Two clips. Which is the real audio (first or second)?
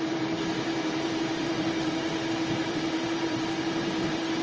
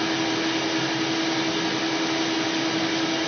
second